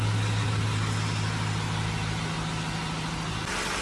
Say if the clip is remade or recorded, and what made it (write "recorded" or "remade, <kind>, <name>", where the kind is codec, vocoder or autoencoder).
recorded